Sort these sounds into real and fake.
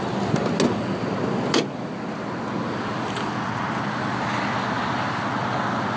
real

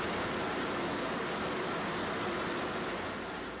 real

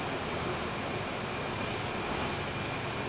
real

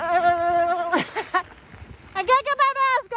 real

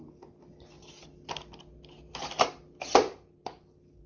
real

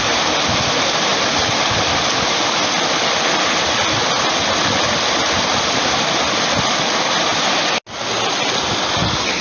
real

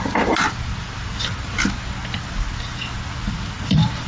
real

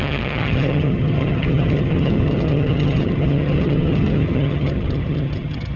fake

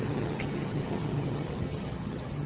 fake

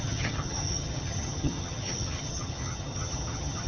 fake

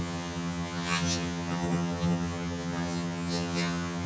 fake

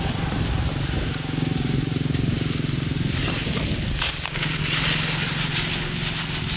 real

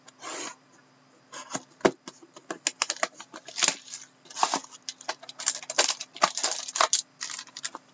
real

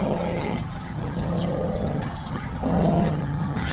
fake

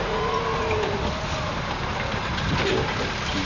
real